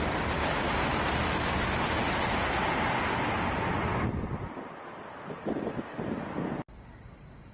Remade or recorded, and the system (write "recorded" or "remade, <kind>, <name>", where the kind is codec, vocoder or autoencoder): recorded